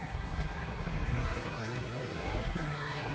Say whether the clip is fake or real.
fake